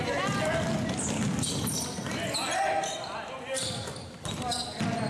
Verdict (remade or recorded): recorded